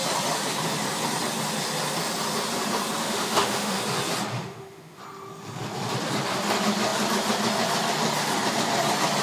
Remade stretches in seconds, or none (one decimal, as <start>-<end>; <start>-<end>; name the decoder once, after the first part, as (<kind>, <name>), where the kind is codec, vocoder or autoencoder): 3.0-3.8 (autoencoder, DAC-VAE); 4.3-5.0